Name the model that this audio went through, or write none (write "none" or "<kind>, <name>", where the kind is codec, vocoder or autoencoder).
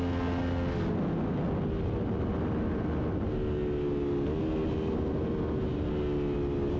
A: none